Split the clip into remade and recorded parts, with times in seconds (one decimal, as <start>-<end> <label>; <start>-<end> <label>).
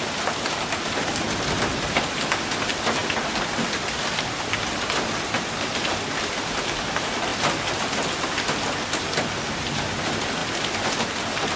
0.0-3.0 recorded; 3.0-4.5 remade; 4.5-11.6 recorded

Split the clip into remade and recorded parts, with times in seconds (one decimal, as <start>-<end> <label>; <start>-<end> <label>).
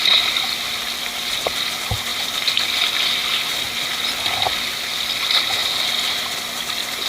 0.0-2.1 recorded; 2.1-2.6 remade; 2.6-3.2 recorded; 3.2-5.0 remade; 5.0-7.1 recorded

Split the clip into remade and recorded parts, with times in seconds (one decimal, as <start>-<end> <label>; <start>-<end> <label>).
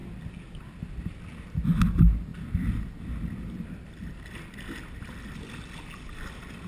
0.0-6.7 recorded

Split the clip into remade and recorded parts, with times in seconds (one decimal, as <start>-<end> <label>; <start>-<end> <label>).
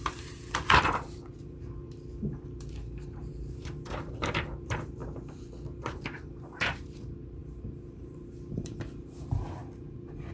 0.0-5.0 remade; 5.0-5.8 recorded; 5.8-9.6 remade; 9.6-10.3 recorded